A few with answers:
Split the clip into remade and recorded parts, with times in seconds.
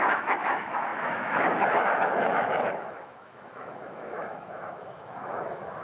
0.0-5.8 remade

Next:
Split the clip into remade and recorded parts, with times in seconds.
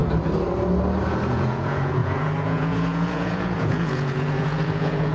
0.0-1.3 recorded; 1.3-5.1 remade